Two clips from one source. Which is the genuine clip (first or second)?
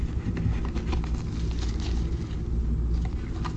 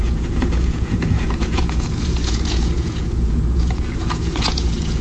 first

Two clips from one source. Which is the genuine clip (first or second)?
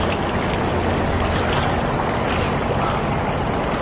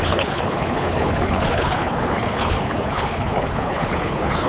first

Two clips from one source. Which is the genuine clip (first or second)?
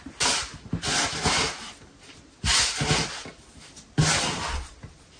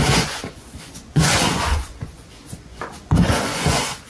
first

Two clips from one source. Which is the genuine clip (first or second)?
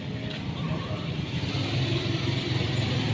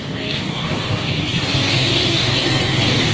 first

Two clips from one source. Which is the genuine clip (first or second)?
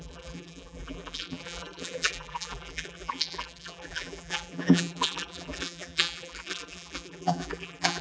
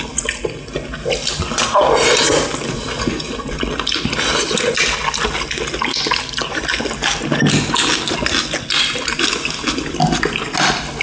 second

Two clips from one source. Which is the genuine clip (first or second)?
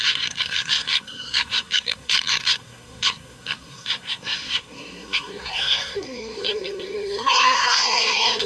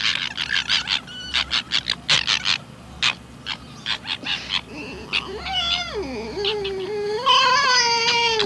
second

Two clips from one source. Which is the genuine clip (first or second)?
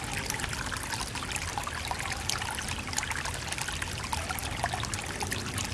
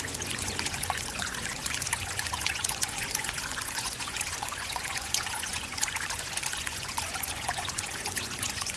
first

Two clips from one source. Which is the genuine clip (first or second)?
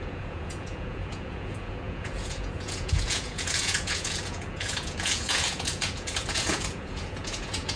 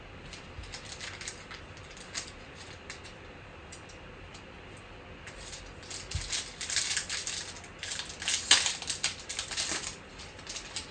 second